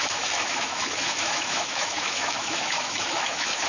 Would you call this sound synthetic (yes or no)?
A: yes